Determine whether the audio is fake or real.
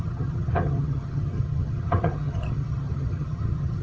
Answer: fake